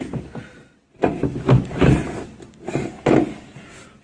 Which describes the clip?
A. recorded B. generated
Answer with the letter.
A